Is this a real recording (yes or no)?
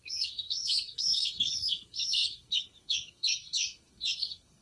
no